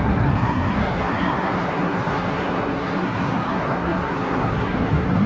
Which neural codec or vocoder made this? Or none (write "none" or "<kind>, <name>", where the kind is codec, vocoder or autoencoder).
codec, SNAC